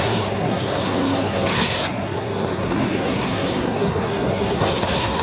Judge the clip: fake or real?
fake